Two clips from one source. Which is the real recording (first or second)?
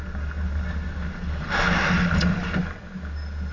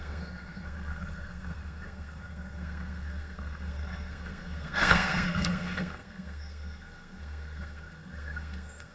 first